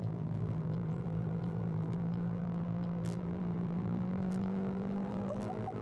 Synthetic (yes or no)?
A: yes